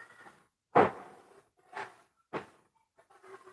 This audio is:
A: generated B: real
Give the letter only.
B